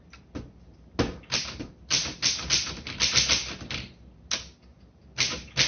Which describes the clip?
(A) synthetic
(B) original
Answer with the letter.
B